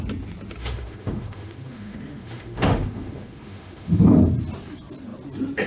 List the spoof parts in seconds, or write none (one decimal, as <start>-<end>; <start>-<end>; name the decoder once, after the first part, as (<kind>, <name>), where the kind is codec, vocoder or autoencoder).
0.6-4.0 (autoencoder, DAC-VAE)